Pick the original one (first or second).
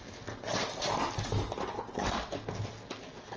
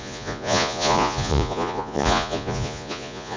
first